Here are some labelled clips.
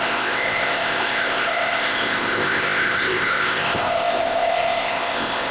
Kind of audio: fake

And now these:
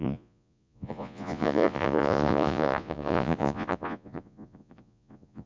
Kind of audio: fake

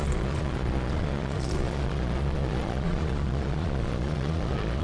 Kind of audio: fake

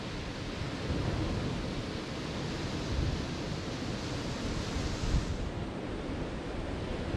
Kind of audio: real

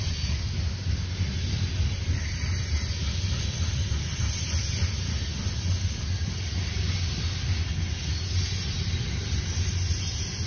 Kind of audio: real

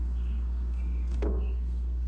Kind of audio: fake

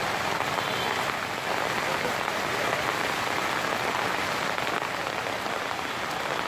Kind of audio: real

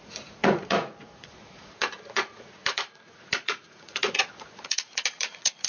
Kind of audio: fake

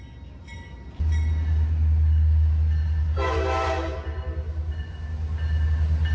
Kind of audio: real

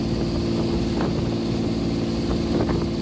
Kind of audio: real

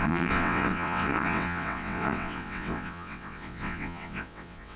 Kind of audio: fake